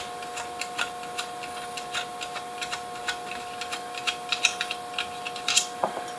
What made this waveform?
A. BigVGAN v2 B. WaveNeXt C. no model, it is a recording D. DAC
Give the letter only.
C